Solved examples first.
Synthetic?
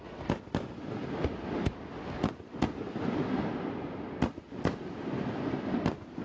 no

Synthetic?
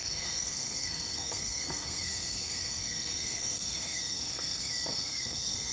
yes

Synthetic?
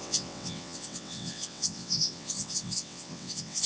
yes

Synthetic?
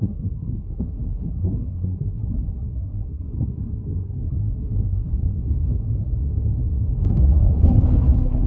yes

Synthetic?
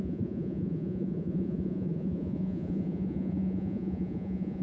yes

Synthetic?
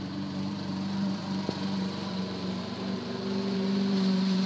yes